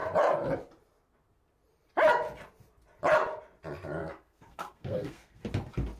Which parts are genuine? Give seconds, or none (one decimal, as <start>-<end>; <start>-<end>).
0.0-4.0; 5.4-6.0